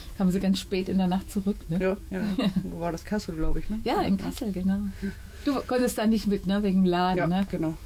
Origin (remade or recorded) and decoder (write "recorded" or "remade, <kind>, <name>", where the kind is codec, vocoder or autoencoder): remade, autoencoder, DAC-VAE